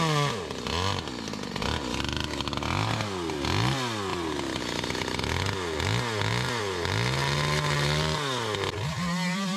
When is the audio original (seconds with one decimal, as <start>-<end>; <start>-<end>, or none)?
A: 0.0-9.6